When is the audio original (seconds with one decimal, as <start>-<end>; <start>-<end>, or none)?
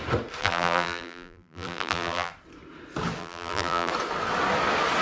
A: 0.0-0.4; 2.3-3.2; 3.9-5.0